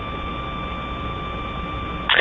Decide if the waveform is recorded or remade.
recorded